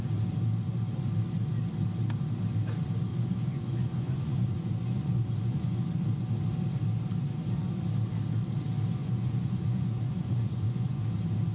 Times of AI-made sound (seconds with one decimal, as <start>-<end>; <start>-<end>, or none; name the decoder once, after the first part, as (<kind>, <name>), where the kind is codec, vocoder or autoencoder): 3.1-5.8 (vocoder, Vocos); 9.0-11.0